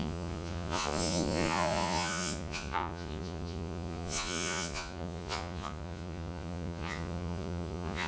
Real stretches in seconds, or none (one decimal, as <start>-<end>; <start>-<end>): none